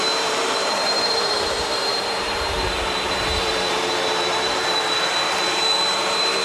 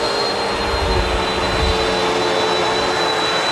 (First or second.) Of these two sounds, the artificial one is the first